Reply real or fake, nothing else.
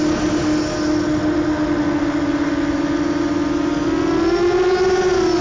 real